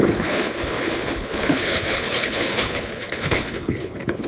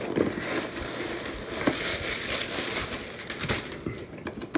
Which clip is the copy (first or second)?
first